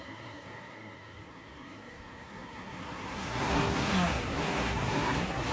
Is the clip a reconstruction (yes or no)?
yes